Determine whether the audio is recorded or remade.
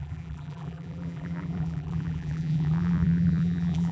remade